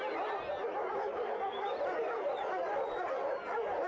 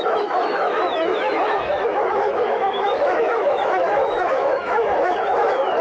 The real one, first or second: first